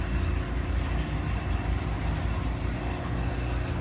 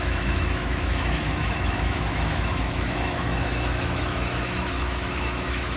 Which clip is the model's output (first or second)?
second